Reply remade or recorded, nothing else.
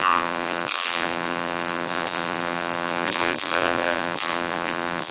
remade